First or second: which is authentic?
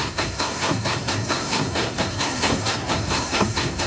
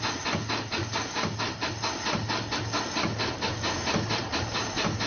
second